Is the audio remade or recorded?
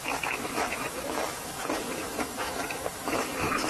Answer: remade